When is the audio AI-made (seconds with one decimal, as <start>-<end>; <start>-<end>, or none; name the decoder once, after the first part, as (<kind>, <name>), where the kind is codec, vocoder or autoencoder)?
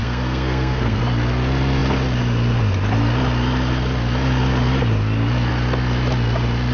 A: 0.0-1.0 (codec, SNAC)